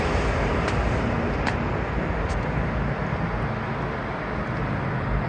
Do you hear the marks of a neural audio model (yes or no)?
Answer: no